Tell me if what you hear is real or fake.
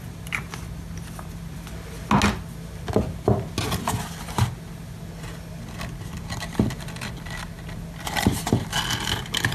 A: real